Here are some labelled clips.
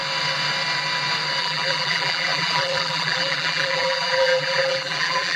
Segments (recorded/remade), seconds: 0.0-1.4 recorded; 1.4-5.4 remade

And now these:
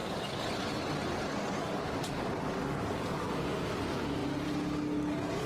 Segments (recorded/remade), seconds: 0.0-1.6 recorded; 1.6-3.8 remade; 3.8-5.5 recorded

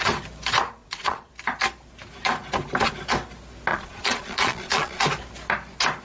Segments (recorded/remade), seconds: 0.0-0.8 recorded; 0.8-1.3 remade; 1.3-3.7 recorded; 3.7-5.0 remade; 5.0-6.0 recorded

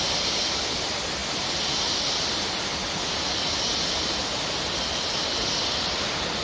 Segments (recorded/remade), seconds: 0.0-6.4 recorded